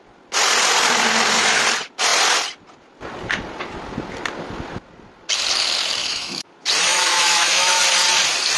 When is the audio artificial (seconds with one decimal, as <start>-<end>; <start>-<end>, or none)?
6.0-6.5; 6.9-7.8